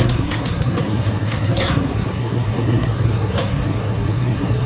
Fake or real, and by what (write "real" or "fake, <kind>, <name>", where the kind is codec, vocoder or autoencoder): fake, codec, SNAC